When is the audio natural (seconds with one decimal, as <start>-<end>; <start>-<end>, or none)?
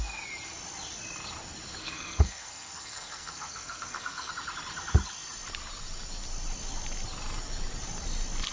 0.0-1.8; 4.3-8.5